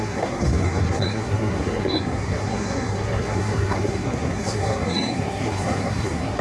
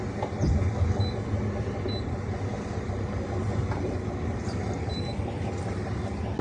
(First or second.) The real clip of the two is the second